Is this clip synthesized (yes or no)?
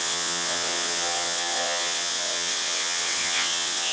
yes